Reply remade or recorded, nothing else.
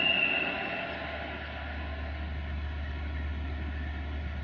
recorded